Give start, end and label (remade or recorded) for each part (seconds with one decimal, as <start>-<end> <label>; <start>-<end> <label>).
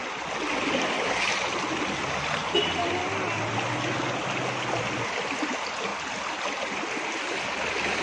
0.0-8.0 recorded